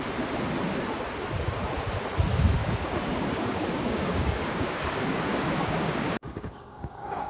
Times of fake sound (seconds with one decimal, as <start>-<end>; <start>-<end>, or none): 2.6-7.3